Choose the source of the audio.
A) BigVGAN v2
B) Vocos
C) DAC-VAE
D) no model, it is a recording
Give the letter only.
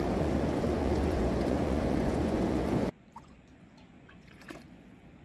B